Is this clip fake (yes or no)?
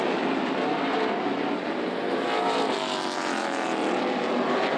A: no